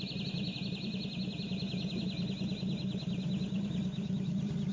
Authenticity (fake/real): real